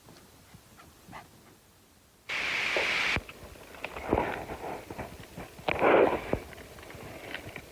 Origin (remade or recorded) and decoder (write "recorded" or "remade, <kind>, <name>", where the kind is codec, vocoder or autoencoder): recorded